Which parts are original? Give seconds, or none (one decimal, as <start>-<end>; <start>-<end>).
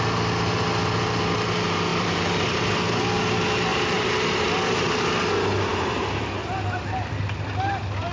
0.0-1.9; 2.7-3.7; 4.9-8.1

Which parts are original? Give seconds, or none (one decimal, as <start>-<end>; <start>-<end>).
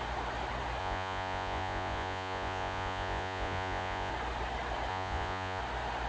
0.0-0.8; 4.1-4.9; 5.6-6.1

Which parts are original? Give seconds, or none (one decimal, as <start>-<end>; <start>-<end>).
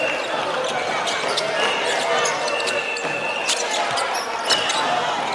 0.0-5.3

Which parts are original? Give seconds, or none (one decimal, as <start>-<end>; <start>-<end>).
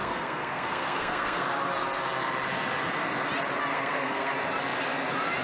1.5-3.7; 4.3-5.4